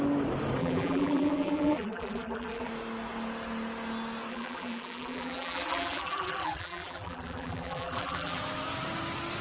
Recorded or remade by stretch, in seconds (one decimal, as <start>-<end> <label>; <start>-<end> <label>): 0.0-0.6 recorded; 0.6-2.7 remade; 2.7-4.3 recorded; 4.3-8.4 remade; 8.4-9.4 recorded